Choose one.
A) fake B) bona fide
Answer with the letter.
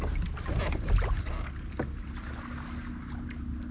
B